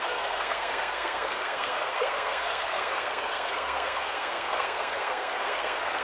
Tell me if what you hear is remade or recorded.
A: remade